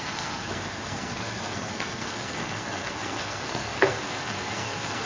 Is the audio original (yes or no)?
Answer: no